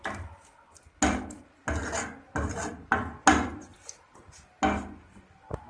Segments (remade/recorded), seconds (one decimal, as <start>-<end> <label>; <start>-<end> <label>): 0.0-5.7 recorded